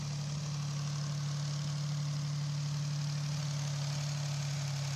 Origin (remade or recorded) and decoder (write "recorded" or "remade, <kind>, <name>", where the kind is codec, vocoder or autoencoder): recorded